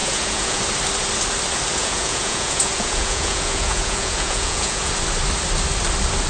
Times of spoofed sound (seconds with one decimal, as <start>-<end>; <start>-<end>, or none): 0.0-0.6; 1.7-4.9

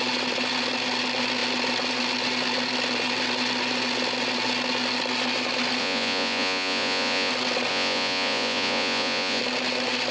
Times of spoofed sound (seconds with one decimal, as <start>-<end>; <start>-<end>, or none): 5.8-7.3; 7.7-9.4

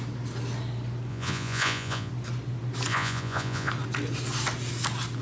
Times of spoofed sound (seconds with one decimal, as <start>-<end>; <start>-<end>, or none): 1.1-2.1; 2.9-3.7

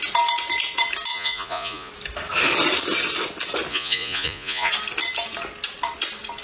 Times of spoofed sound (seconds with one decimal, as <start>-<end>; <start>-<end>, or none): 1.1-1.9; 3.7-4.7

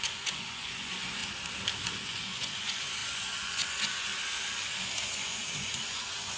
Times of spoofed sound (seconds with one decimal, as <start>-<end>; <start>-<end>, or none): 0.0-1.2; 1.8-4.1; 5.0-6.4

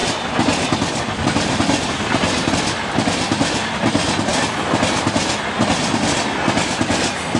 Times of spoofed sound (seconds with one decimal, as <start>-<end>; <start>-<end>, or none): none